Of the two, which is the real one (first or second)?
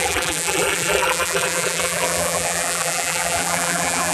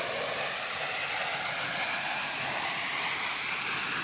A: second